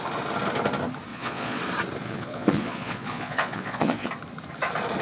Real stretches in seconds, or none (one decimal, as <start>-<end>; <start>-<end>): 0.0-1.1; 1.6-2.0; 4.1-5.0